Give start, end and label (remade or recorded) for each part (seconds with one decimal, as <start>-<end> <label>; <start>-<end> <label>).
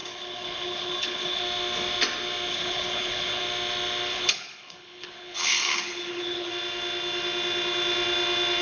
0.0-1.4 remade; 1.4-2.5 recorded; 2.5-3.4 remade; 3.4-4.1 recorded; 4.1-6.5 remade; 6.5-8.6 recorded